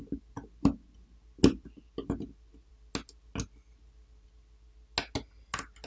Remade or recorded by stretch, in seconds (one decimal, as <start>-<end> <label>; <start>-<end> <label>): 0.0-5.9 recorded